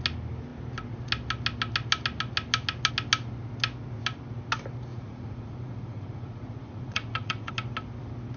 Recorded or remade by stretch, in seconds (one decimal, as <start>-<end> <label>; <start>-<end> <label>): 0.0-4.9 recorded; 4.9-7.5 remade; 7.5-8.4 recorded